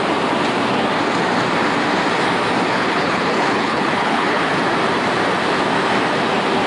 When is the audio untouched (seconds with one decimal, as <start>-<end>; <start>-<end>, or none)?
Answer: 0.0-2.7; 4.5-6.7